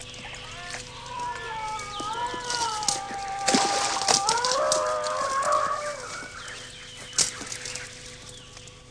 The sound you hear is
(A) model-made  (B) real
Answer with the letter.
B